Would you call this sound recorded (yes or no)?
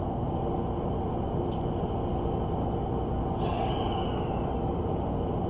yes